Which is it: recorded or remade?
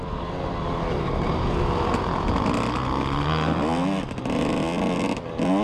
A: recorded